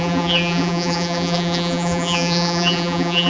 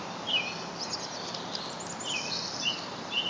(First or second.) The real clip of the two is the second